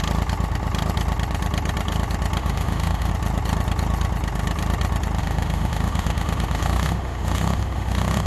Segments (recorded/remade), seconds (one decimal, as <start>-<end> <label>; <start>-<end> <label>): 0.0-2.4 recorded; 2.4-3.1 remade; 3.1-5.2 recorded; 5.2-8.3 remade